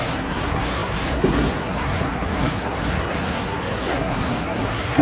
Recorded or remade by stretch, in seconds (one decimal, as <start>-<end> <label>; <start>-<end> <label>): 0.0-5.0 remade